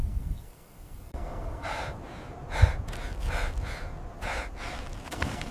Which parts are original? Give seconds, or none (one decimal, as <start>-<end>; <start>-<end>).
1.8-5.1